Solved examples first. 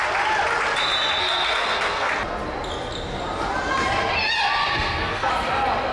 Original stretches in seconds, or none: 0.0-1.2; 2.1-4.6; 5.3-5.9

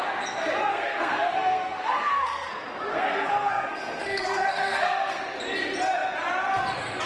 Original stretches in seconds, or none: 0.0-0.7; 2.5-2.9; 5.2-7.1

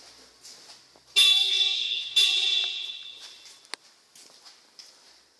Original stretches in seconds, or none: 0.0-1.2; 2.1-5.4

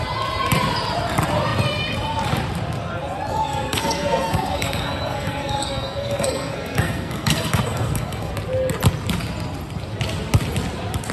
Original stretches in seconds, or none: 0.0-3.3; 8.3-11.1

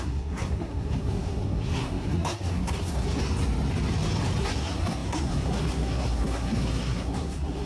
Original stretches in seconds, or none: 3.2-4.4

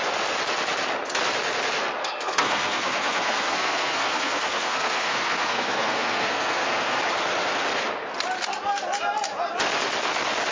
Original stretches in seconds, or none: 0.0-2.0; 7.0-10.5